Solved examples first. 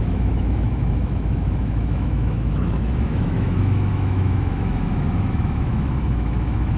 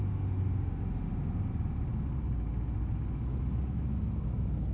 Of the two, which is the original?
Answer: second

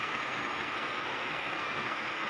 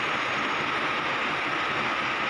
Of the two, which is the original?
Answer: second